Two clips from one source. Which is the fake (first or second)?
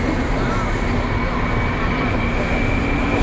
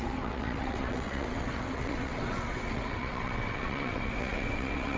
second